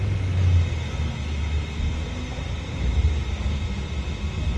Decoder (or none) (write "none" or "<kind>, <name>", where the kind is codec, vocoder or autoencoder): none